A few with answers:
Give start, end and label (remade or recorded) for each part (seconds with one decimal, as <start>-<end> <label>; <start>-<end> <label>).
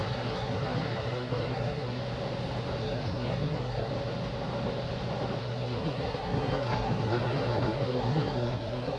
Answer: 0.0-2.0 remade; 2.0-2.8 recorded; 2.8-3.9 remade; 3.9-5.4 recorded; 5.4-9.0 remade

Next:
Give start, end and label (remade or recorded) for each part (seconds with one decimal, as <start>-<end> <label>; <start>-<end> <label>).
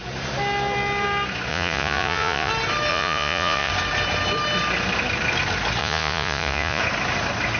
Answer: 0.0-1.5 recorded; 1.5-2.5 remade; 2.5-2.9 recorded; 2.9-3.7 remade; 3.7-5.8 recorded; 5.8-6.8 remade; 6.8-7.6 recorded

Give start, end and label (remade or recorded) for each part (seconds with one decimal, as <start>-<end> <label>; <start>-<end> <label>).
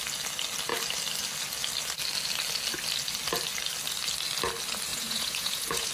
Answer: 0.0-4.9 recorded; 4.9-5.9 remade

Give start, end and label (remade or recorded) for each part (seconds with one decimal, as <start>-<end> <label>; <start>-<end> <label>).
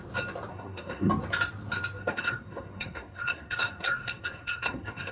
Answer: 0.0-0.5 recorded; 0.5-1.1 remade; 1.1-2.0 recorded; 2.0-5.1 remade